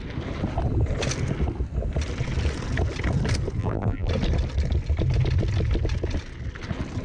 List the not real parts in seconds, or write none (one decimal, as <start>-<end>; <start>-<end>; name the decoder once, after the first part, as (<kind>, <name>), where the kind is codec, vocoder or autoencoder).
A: 3.6-4.1 (vocoder, BigVGAN v2)